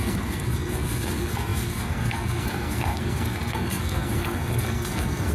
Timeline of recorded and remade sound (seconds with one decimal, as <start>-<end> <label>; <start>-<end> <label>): 0.0-5.3 remade